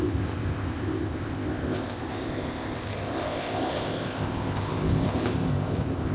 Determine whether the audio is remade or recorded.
remade